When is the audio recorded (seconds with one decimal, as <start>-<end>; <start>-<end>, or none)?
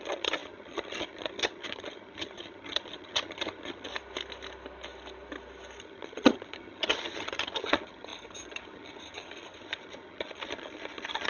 3.9-5.8